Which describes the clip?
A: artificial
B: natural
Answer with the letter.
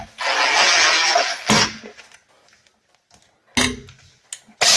B